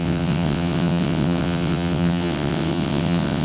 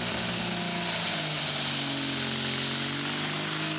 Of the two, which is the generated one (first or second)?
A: first